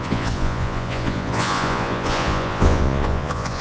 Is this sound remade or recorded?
remade